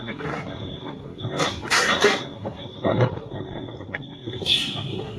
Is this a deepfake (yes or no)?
yes